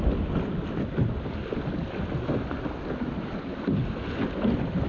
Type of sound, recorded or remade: recorded